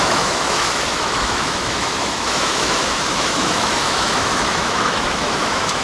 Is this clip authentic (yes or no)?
no